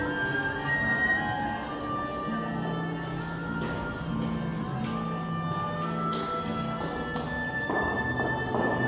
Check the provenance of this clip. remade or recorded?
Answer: recorded